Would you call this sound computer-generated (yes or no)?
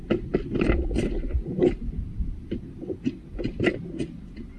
no